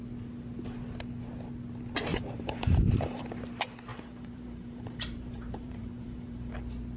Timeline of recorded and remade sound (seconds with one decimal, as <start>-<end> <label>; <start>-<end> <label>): 0.0-2.1 recorded; 2.1-3.2 remade; 3.2-3.9 recorded; 3.9-6.5 remade; 6.5-7.0 recorded

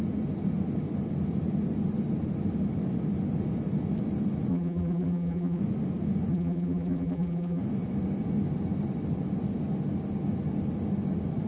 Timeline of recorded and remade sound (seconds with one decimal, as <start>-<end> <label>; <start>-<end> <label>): 0.0-4.5 recorded; 4.5-5.6 remade; 5.6-6.3 recorded; 6.3-7.6 remade; 7.6-11.5 recorded